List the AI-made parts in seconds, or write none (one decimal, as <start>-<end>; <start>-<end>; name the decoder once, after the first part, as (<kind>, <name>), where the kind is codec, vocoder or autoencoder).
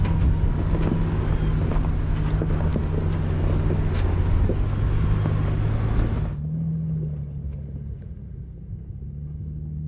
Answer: none